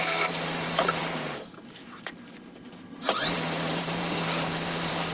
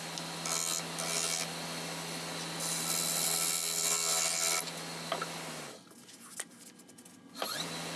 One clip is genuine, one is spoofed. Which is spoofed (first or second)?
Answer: first